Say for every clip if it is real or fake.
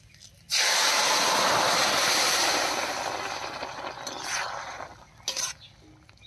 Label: real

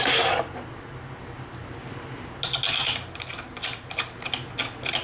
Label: real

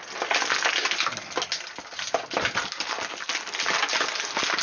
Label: real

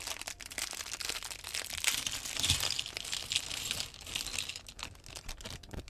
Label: real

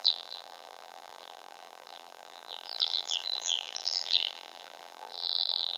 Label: fake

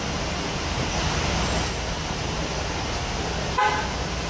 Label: real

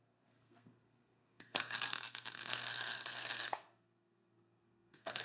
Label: fake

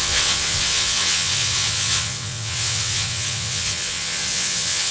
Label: fake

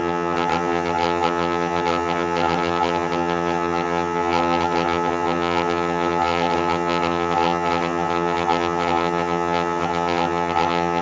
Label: fake